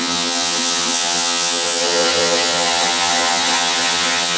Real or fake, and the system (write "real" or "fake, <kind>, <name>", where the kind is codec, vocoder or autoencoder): fake, vocoder, HiFi-GAN